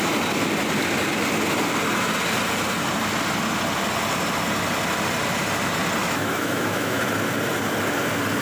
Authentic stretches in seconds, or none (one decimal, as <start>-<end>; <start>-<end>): 0.0-6.0; 7.0-8.4